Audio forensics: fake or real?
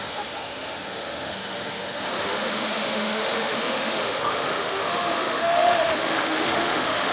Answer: fake